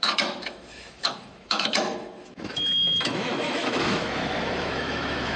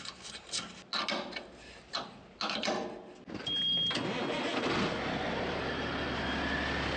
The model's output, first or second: first